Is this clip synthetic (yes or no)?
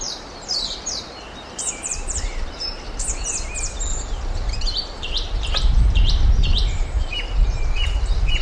yes